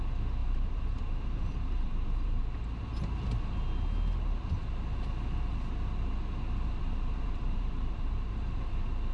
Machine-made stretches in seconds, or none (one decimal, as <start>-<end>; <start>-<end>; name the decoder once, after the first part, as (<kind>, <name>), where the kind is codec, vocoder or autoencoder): 0.4-2.4 (vocoder, BigVGAN v2); 6.8-8.7